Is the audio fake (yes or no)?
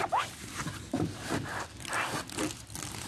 no